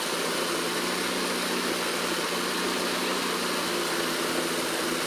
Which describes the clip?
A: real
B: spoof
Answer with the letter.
A